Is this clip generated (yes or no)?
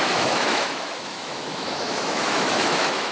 yes